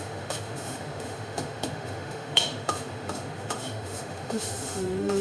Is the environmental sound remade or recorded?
remade